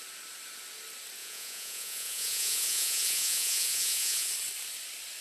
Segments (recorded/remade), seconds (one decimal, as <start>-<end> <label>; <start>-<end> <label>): 0.0-1.2 recorded; 1.2-4.3 remade; 4.3-5.2 recorded